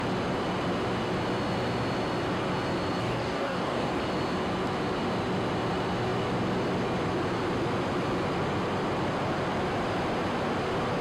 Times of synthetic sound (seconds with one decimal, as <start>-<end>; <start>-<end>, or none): 3.0-4.0